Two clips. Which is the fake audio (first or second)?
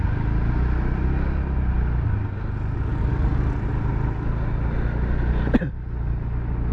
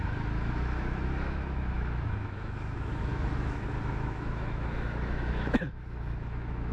second